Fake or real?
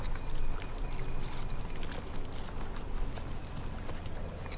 real